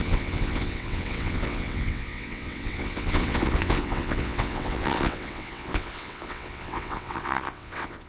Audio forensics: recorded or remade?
remade